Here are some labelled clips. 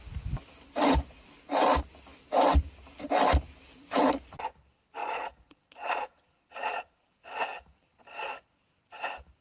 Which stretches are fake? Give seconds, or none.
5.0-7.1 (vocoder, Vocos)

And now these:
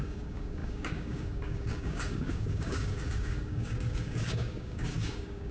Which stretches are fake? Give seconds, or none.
0.0-5.5 (codec, DAC)

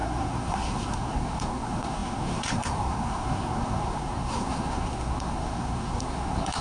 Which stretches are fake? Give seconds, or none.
0.0-6.6 (codec, SNAC)

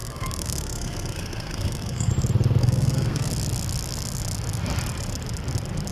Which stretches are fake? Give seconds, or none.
0.0-2.1 (codec, SNAC); 2.6-3.3

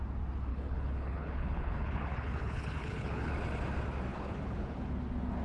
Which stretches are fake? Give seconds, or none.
0.5-3.3 (codec, HILCodec); 4.1-4.8

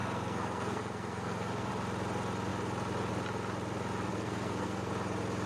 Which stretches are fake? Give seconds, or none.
0.0-1.7 (codec, SNAC); 4.1-4.9

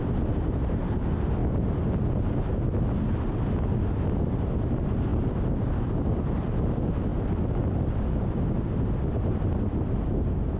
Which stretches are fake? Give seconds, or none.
none